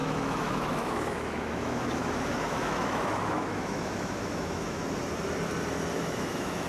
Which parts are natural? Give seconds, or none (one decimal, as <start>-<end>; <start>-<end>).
4.8-5.9